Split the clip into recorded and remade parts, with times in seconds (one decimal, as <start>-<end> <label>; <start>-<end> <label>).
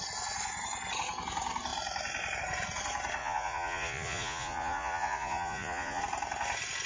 0.0-3.2 recorded; 3.2-6.0 remade; 6.0-6.9 recorded